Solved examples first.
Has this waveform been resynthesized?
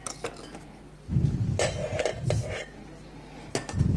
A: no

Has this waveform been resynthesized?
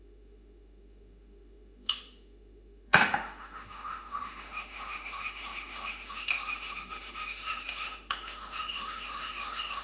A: yes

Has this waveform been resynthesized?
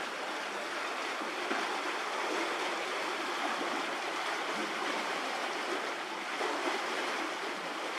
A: no